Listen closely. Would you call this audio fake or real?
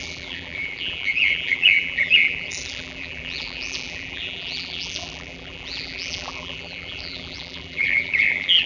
fake